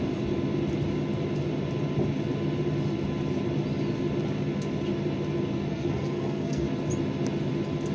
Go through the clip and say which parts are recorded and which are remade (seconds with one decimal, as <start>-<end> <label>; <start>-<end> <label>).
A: 0.0-5.7 recorded; 5.7-6.7 remade; 6.7-7.9 recorded

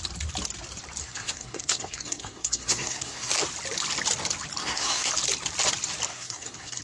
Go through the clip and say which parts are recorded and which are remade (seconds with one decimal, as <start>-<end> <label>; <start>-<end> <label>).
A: 0.0-1.0 recorded; 1.0-3.3 remade; 3.3-4.6 recorded; 4.6-5.1 remade; 5.1-6.1 recorded; 6.1-6.8 remade

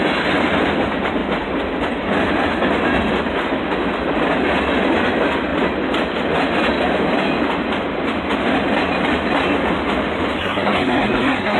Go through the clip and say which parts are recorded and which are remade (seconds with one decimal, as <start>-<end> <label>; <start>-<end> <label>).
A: 0.0-10.4 recorded; 10.4-11.6 remade

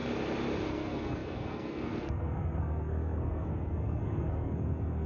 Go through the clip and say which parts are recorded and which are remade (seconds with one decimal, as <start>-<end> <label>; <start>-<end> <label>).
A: 0.0-0.7 recorded; 0.7-5.1 remade

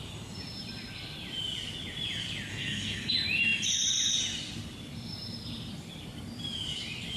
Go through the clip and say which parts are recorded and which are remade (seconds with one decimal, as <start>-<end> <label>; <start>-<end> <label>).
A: 0.0-2.5 recorded; 2.5-3.1 remade; 3.1-7.2 recorded

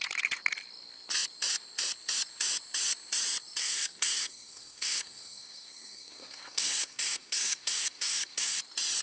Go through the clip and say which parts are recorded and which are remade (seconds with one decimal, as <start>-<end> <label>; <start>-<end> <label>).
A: 0.0-3.6 recorded; 3.6-8.6 remade; 8.6-9.0 recorded